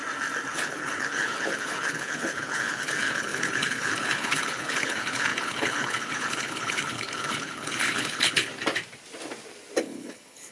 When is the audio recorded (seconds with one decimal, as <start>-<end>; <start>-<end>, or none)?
0.0-0.5; 8.5-9.8